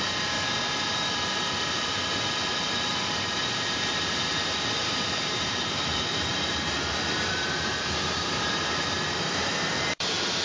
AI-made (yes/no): yes